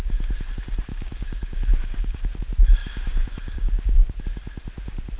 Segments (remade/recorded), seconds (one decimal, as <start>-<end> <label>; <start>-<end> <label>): 0.0-0.9 recorded; 0.9-2.4 remade; 2.4-2.8 recorded; 2.8-4.2 remade; 4.2-5.2 recorded